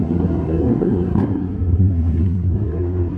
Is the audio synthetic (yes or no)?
yes